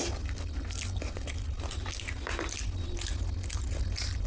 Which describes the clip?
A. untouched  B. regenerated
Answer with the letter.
A